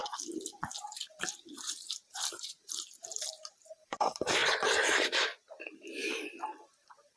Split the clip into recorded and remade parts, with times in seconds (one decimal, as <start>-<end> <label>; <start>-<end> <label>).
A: 0.0-0.8 recorded; 0.8-7.2 remade